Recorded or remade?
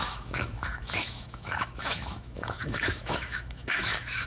remade